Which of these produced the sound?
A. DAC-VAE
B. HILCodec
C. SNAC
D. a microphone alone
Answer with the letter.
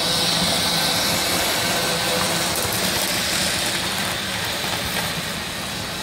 D